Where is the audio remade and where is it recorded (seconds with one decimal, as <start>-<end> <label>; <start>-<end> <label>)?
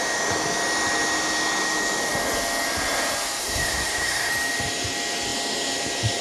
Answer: 0.0-3.4 recorded; 3.4-4.3 remade; 4.3-6.2 recorded